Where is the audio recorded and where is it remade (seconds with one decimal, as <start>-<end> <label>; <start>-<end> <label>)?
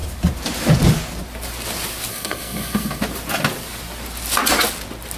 0.0-2.1 recorded; 2.1-3.0 remade; 3.0-5.2 recorded